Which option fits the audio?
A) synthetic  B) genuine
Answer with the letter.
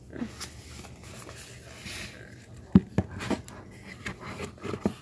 B